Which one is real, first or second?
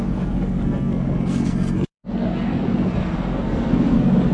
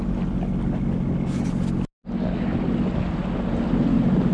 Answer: second